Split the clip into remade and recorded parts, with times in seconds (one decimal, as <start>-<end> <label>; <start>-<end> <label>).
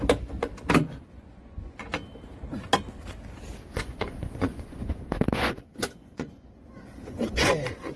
0.0-0.5 remade; 0.5-1.1 recorded; 1.1-1.9 remade; 1.9-3.7 recorded; 3.7-8.0 remade